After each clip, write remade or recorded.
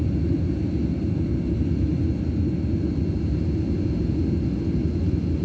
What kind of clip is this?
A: recorded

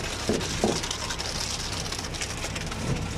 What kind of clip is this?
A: recorded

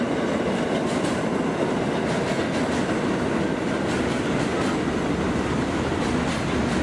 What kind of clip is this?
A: recorded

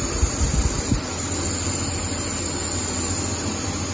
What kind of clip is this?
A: recorded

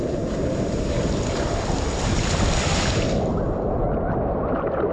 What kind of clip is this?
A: recorded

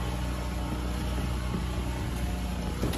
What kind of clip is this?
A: recorded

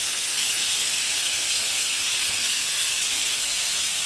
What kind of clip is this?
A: remade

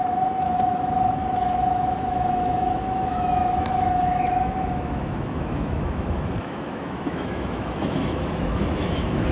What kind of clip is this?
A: remade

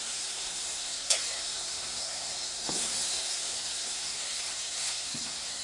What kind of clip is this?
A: remade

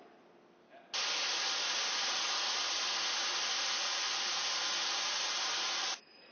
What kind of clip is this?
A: recorded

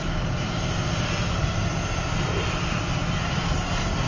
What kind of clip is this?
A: recorded